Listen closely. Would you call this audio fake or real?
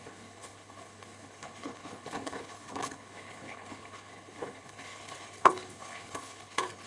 fake